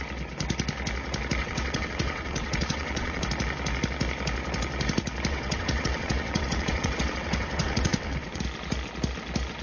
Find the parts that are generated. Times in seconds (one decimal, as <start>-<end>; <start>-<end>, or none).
1.4-3.2; 5.3-8.4

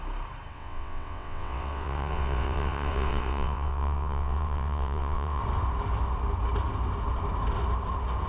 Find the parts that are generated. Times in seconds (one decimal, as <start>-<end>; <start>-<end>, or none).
0.5-5.4

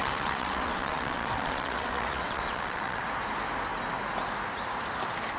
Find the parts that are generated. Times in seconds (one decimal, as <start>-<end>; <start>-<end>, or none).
0.0-3.0

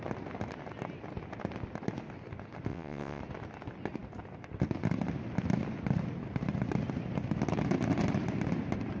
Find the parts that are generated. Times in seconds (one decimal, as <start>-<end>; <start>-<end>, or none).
2.7-3.2

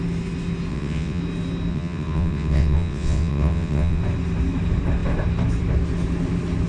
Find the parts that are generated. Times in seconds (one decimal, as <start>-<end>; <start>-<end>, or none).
0.7-1.2; 1.7-4.0